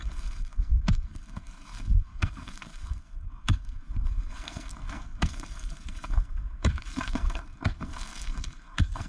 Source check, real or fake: fake